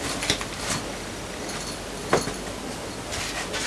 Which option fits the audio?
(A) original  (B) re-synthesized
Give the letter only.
A